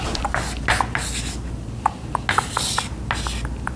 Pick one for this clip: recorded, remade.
recorded